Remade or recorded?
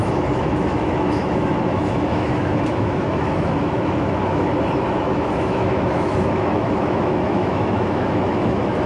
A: remade